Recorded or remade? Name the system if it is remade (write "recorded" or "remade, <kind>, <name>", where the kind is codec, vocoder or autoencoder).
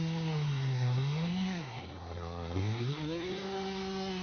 remade, codec, SNAC